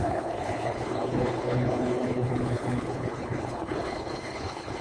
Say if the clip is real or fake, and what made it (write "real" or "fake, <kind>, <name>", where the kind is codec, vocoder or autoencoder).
fake, codec, HILCodec